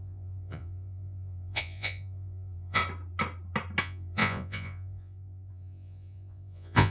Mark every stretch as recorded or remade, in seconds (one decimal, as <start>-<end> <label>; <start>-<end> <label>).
0.0-2.8 remade; 2.8-3.8 recorded; 3.8-6.9 remade